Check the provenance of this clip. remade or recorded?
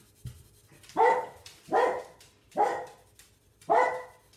recorded